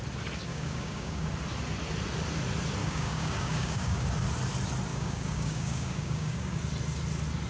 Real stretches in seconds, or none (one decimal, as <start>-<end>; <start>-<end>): 0.0-0.5; 1.3-2.8; 4.1-4.9; 6.6-7.5